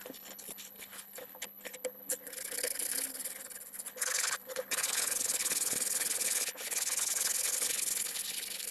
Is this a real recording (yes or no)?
no